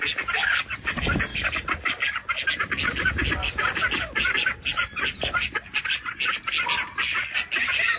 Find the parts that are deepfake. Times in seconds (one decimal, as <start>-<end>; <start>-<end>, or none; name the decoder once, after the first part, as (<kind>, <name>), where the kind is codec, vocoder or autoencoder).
none